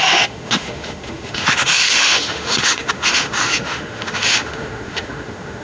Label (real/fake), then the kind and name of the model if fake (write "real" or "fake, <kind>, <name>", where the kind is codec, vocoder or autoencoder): fake, autoencoder, DAC-VAE